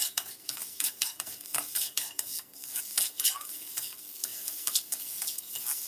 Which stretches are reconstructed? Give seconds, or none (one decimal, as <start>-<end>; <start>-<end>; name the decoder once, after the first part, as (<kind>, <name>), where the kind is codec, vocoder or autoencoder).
0.0-5.9 (codec, SNAC)